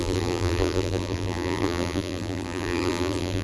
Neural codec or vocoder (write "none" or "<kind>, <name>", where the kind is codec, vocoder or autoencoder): vocoder, BigVGAN v2